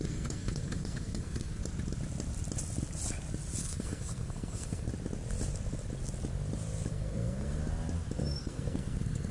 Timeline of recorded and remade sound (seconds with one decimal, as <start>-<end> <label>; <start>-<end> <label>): 0.0-1.6 remade; 1.6-3.6 recorded; 3.6-4.9 remade; 4.9-6.9 recorded; 6.9-7.6 remade; 7.6-8.4 recorded; 8.4-9.3 remade